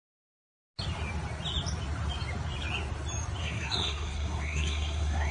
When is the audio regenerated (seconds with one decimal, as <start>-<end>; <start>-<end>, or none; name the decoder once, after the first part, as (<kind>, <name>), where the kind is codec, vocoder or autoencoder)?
3.4-5.3 (codec, SNAC)